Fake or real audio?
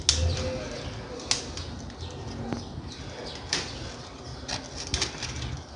real